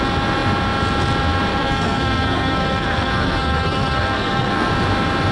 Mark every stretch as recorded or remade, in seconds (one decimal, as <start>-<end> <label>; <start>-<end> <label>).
0.0-1.5 recorded; 1.5-4.7 remade; 4.7-5.3 recorded